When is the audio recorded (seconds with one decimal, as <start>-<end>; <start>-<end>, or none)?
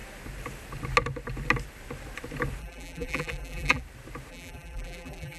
0.0-2.6; 3.8-4.3